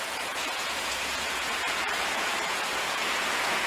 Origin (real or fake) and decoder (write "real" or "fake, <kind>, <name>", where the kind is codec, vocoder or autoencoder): fake, vocoder, Vocos